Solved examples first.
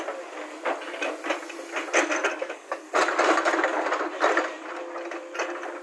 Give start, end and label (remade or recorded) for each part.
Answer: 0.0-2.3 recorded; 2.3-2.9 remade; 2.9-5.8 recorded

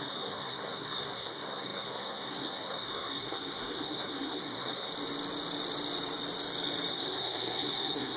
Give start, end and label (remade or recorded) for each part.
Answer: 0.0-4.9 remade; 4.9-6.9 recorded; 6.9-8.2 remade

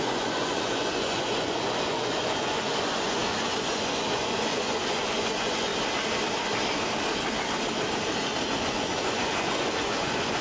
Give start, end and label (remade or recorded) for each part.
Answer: 0.0-5.7 remade; 5.7-8.6 recorded; 8.6-10.4 remade

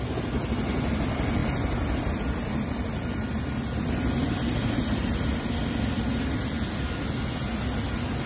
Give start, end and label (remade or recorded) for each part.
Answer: 0.0-8.3 recorded

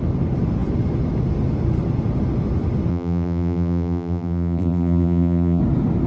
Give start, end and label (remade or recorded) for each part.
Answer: 0.0-2.9 recorded; 2.9-5.6 remade; 5.6-6.1 recorded